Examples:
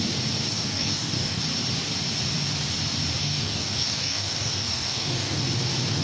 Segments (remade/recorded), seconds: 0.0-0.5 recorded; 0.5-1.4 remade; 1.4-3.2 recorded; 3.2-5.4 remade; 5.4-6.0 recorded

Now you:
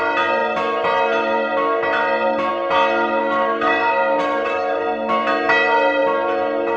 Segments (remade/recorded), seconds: 0.0-3.2 recorded; 3.2-4.8 remade; 4.8-6.8 recorded

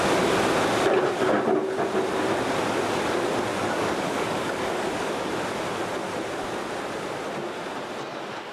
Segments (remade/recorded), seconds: 0.0-3.5 recorded; 3.5-5.3 remade; 5.3-8.5 recorded

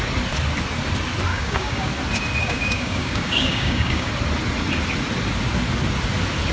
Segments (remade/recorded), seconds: 0.0-1.3 recorded; 1.3-1.9 remade; 1.9-2.4 recorded; 2.4-4.1 remade; 4.1-6.5 recorded

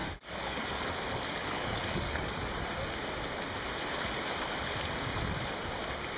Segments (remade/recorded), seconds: 0.0-0.8 remade; 0.8-1.4 recorded; 1.4-2.6 remade; 2.6-6.2 recorded

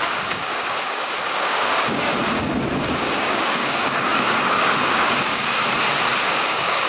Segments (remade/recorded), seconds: 0.0-2.1 remade; 2.1-2.9 recorded; 2.9-5.6 remade; 5.6-6.2 recorded; 6.2-6.9 remade

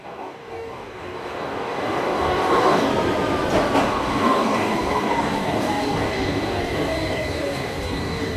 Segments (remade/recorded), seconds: 0.0-2.9 remade; 2.9-3.8 recorded; 3.8-8.4 remade